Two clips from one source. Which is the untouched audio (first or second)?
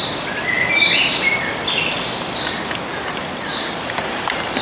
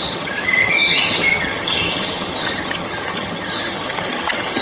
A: first